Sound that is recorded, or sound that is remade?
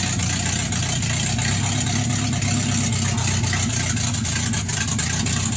recorded